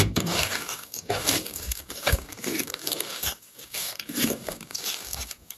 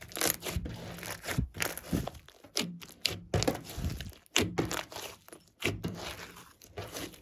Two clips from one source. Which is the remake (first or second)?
first